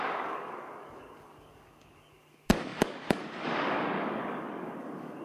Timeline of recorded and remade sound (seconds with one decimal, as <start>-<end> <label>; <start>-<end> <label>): 0.0-5.2 remade